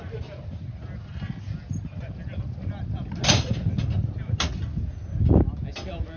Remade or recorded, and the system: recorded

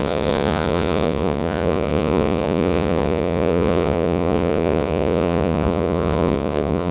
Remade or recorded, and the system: remade, vocoder, Vocos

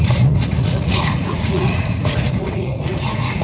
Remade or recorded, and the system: remade, vocoder, Vocos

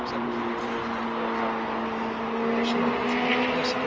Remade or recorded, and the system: recorded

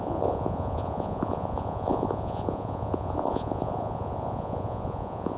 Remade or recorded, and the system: remade, vocoder, Vocos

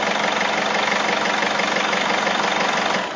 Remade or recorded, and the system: recorded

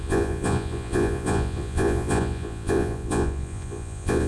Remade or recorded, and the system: remade, vocoder, Vocos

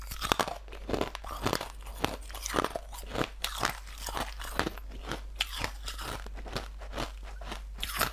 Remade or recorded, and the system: recorded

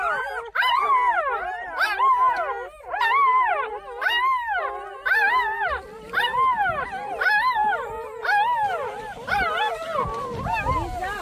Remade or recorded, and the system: recorded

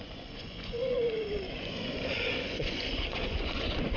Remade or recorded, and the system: remade, vocoder, Vocos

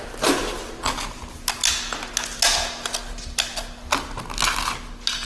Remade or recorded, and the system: recorded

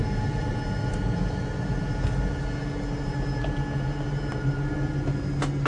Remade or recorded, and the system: recorded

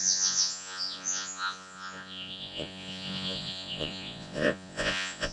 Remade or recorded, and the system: remade, vocoder, Vocos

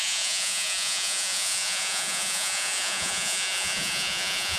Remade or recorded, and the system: remade, vocoder, Vocos